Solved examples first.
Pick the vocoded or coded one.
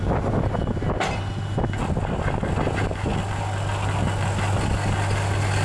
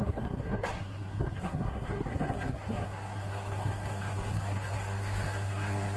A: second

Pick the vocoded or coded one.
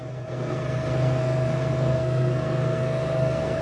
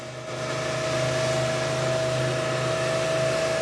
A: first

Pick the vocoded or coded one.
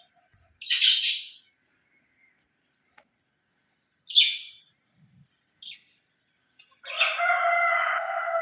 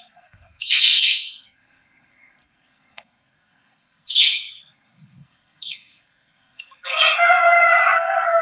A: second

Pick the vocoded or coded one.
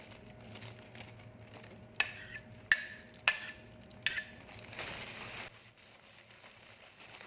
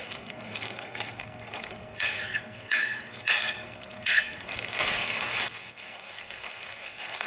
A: second